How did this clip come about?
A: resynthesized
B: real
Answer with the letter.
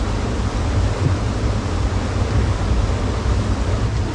B